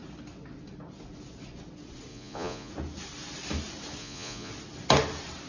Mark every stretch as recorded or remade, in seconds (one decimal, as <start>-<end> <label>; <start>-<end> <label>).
0.0-2.1 recorded; 2.1-2.7 remade; 2.7-4.0 recorded; 4.0-4.5 remade; 4.5-5.5 recorded